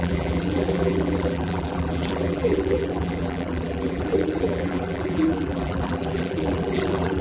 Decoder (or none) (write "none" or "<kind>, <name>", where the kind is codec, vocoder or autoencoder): vocoder, BigVGAN v2